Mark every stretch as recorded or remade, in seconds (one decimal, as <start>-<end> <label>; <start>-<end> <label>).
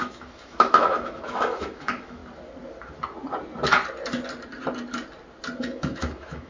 0.0-2.2 remade; 2.2-5.6 recorded; 5.6-6.5 remade